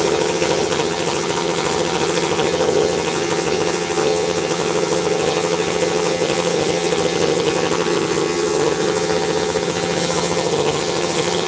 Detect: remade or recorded remade